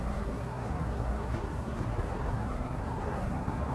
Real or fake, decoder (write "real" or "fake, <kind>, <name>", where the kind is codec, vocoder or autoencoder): fake, codec, SNAC